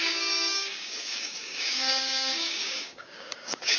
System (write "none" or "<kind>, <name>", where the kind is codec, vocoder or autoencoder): codec, DAC